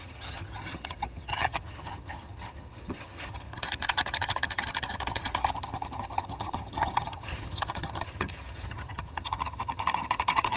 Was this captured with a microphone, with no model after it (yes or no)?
no